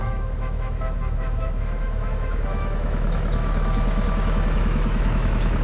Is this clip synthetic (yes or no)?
yes